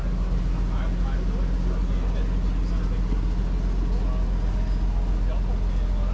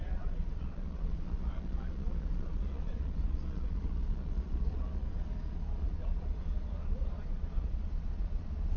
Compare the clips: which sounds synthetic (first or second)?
second